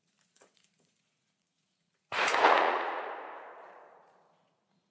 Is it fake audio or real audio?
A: fake